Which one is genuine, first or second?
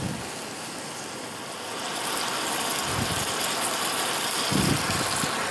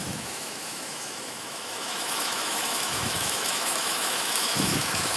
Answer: first